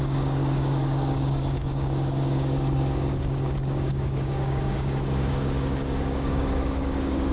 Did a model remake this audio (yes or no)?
yes